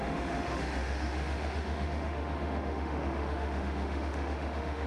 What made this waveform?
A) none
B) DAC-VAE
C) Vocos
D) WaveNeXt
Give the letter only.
B